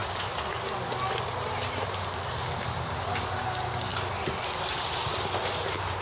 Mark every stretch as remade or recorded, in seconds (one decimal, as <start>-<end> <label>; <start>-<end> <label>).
0.0-6.0 recorded